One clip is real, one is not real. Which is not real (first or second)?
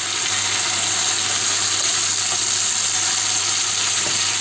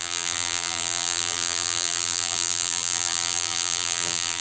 second